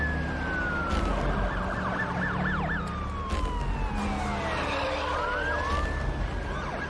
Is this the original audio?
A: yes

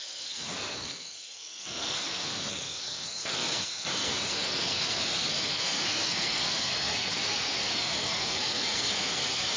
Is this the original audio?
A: no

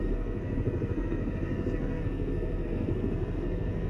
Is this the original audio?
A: no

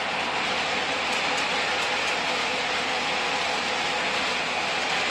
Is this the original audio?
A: yes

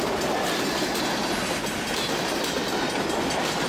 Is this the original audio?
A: yes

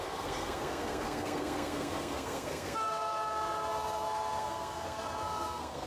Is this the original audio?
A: no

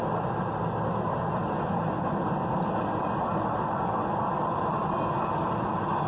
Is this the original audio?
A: yes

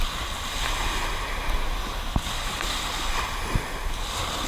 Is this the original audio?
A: yes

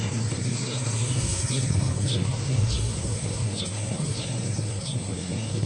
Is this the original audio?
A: no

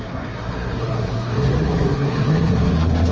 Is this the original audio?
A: no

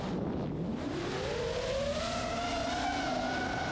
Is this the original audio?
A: yes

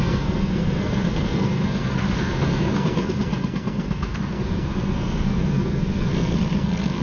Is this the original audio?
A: no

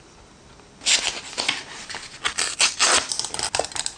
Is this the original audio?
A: yes